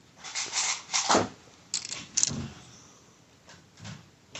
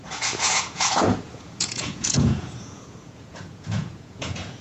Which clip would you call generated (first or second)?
second